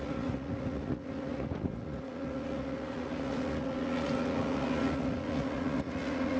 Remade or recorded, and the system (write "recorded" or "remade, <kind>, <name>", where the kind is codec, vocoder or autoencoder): remade, vocoder, Vocos